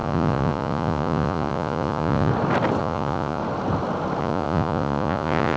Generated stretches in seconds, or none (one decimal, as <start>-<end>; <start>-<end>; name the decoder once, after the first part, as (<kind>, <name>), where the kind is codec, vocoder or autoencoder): 0.0-2.3 (vocoder, Vocos); 2.8-3.4; 4.2-5.6